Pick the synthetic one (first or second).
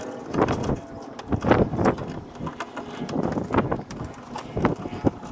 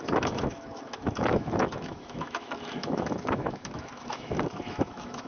second